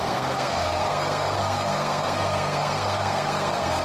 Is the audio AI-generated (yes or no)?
yes